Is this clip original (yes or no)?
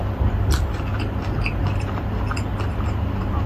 yes